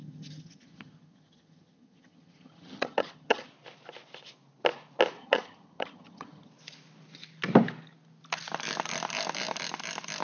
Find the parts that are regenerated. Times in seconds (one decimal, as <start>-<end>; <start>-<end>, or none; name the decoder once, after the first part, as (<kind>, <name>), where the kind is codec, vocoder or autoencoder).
0.0-3.5 (vocoder, HiFi-GAN); 5.2-6.5